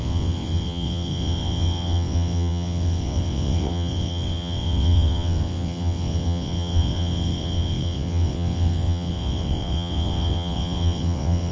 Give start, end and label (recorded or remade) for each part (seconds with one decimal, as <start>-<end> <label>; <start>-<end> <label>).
0.0-11.5 remade